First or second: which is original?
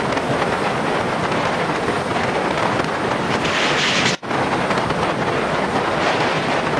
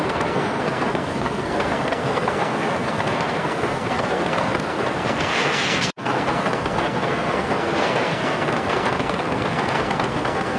first